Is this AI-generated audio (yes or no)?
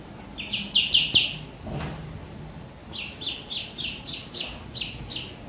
no